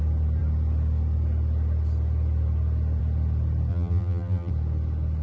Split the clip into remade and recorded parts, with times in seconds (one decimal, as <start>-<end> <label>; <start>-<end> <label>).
0.0-3.7 recorded; 3.7-4.5 remade; 4.5-5.2 recorded